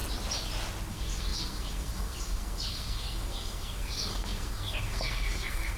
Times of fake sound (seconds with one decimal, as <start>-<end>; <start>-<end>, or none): 0.9-5.8

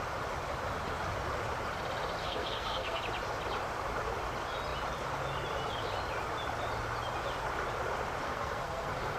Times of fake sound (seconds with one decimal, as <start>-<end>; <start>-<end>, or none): 2.2-3.0; 8.2-9.2

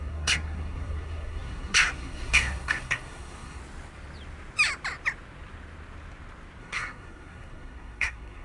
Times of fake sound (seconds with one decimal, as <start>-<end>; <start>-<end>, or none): 0.0-3.6; 6.6-8.4

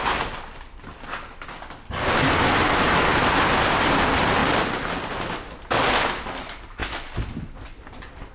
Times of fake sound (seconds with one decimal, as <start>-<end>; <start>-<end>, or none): none

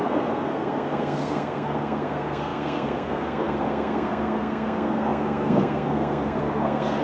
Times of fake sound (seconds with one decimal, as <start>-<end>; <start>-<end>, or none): 0.0-7.0